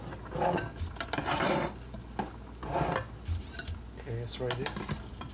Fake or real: real